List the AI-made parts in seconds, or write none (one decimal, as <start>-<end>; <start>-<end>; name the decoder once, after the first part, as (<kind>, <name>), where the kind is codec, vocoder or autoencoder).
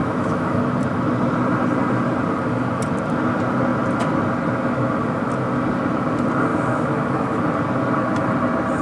0.0-0.6 (autoencoder, DAC-VAE); 6.5-7.4